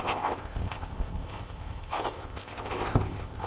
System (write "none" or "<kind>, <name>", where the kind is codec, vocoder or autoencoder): codec, ZipCodec